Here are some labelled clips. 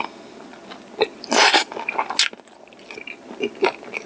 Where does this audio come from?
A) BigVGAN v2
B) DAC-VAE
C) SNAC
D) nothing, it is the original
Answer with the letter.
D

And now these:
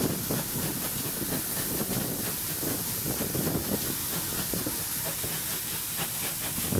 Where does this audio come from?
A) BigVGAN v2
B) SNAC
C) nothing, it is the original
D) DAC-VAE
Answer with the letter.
C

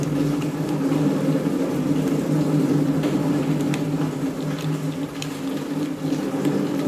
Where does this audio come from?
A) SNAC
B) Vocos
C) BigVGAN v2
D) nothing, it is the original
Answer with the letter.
D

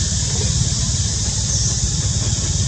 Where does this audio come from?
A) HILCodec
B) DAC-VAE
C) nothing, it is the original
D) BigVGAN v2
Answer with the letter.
C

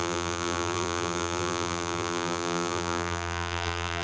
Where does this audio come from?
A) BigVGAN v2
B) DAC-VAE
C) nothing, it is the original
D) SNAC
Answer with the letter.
A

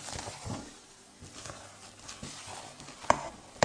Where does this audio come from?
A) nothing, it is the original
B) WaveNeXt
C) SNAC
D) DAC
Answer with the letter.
A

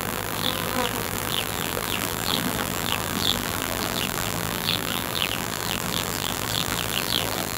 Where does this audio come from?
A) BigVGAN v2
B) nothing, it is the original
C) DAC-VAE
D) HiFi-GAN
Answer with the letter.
A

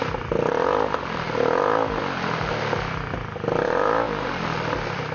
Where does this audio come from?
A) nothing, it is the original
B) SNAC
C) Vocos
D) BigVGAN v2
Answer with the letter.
D